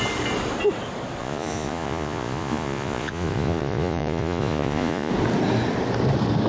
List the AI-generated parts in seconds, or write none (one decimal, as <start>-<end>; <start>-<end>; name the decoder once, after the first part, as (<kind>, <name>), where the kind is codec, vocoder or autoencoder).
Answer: 1.2-5.1 (vocoder, Vocos)